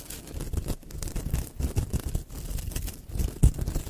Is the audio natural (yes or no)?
no